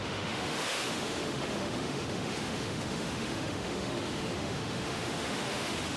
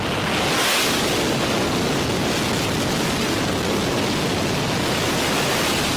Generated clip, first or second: first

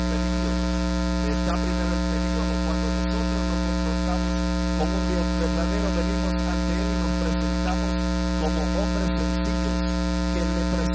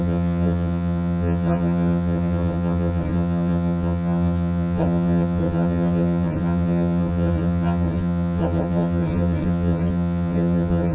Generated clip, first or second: second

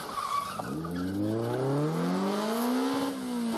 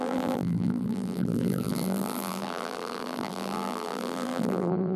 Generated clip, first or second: second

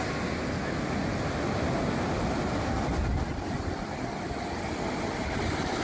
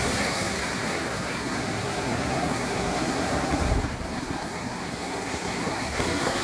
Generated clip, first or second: second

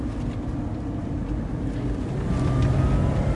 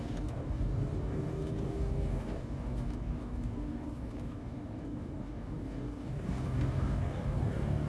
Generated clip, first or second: second